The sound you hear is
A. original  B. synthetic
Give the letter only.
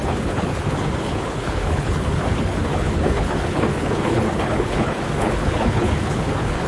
B